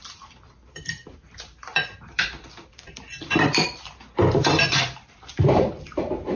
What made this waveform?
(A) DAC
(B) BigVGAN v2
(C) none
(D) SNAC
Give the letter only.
B